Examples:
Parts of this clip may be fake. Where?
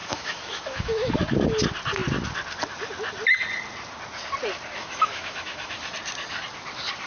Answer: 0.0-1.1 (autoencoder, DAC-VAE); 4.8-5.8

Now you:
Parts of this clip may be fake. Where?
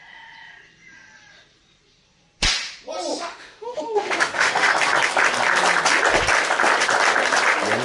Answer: 3.1-4.7 (autoencoder, DAC-VAE)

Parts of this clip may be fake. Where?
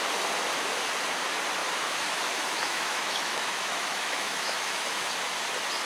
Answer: 1.6-5.1 (autoencoder, DAC-VAE)